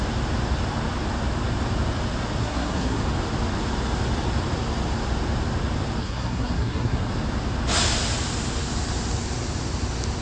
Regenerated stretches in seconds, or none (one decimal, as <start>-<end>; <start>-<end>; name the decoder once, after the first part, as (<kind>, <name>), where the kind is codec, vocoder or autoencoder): 2.4-3.0 (codec, SNAC); 6.0-7.1